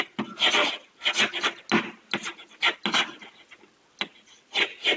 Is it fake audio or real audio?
real